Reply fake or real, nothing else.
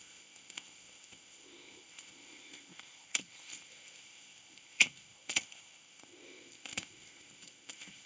fake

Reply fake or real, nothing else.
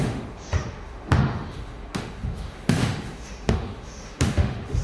fake